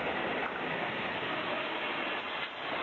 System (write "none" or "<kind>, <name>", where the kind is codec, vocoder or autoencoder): none